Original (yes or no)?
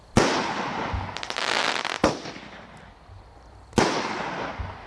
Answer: yes